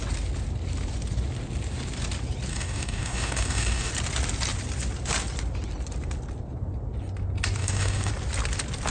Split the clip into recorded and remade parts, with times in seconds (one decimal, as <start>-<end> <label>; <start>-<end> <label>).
0.0-2.5 recorded; 2.5-3.9 remade; 3.9-7.6 recorded; 7.6-8.1 remade; 8.1-8.9 recorded